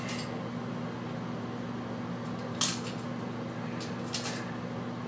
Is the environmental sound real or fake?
real